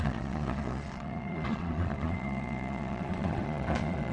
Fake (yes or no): yes